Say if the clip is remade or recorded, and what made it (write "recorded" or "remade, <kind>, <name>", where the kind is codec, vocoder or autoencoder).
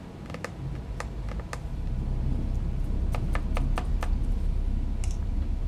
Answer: recorded